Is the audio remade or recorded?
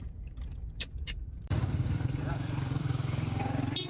remade